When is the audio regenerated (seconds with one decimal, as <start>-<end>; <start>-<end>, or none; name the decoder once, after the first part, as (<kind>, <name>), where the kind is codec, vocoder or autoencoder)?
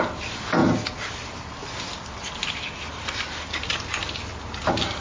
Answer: none